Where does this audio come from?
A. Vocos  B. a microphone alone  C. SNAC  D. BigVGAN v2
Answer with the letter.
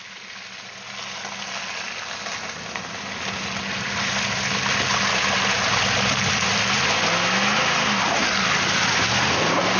B